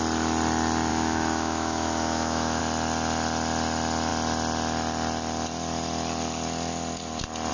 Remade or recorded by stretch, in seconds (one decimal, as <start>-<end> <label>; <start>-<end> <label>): 0.0-0.9 recorded; 0.9-2.6 remade; 2.6-7.5 recorded